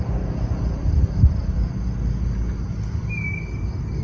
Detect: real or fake real